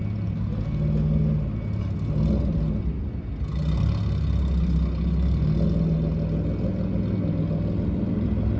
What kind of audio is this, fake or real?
real